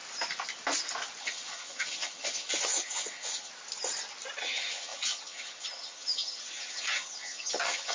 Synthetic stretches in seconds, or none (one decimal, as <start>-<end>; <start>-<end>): 1.2-3.5; 4.4-7.9